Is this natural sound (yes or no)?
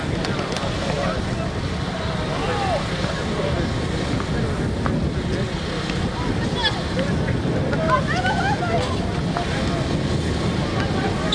yes